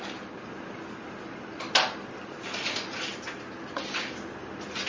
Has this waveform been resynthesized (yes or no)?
no